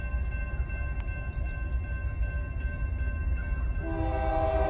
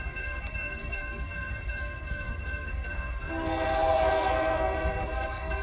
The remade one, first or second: second